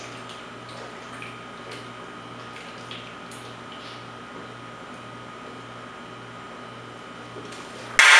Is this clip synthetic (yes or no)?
no